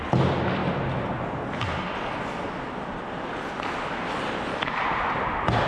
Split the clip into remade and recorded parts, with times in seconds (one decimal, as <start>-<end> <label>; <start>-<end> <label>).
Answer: 0.0-5.7 recorded